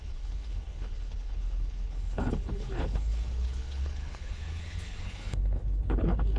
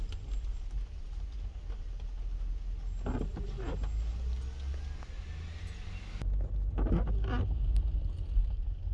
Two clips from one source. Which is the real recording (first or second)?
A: second